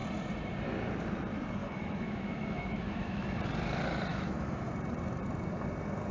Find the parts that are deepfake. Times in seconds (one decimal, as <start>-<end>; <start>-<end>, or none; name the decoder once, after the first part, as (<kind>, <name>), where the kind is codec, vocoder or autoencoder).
1.6-3.4 (autoencoder, DAC-VAE); 4.1-4.7